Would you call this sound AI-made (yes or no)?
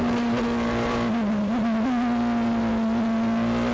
no